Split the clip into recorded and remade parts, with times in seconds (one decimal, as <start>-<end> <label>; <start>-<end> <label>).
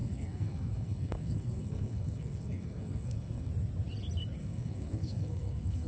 0.0-3.5 remade; 3.5-4.4 recorded; 4.4-5.9 remade